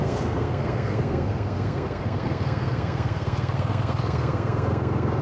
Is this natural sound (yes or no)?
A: no